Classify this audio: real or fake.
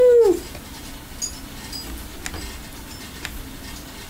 real